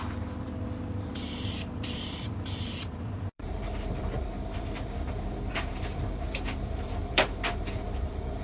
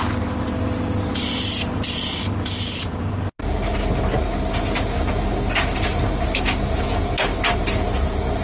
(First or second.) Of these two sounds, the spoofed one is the first